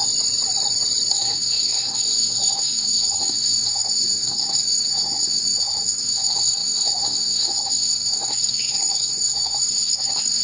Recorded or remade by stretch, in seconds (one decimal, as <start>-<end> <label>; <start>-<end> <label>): 0.0-1.1 recorded; 1.1-10.4 remade